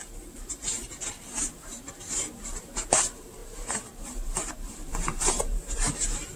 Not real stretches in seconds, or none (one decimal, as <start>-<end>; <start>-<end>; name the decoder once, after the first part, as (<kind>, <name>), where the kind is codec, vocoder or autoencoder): 0.0-1.7 (vocoder, BigVGAN v2); 2.4-6.4

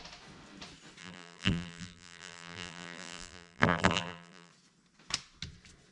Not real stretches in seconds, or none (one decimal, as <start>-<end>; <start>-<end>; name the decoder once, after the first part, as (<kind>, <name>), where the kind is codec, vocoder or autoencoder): 1.0-4.5 (vocoder, BigVGAN v2)

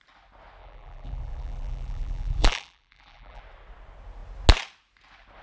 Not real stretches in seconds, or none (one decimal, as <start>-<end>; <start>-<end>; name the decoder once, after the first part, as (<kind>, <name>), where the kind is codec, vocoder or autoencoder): 0.6-3.4 (vocoder, BigVGAN v2)

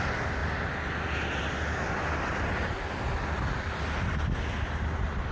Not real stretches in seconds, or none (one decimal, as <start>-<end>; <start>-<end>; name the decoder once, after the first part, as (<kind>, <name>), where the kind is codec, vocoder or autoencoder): none

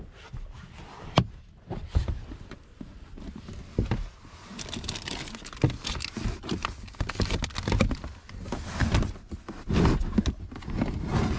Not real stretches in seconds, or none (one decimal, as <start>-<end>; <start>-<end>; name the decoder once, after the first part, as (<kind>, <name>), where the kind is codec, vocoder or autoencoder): none